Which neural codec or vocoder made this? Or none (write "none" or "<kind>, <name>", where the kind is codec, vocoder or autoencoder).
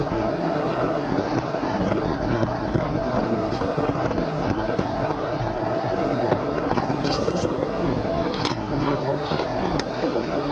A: codec, SNAC